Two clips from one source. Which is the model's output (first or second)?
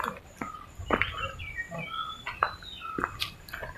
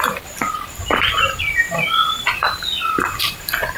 second